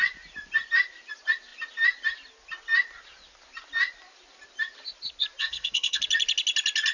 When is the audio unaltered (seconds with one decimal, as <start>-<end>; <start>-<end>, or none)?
0.0-5.4; 6.0-6.9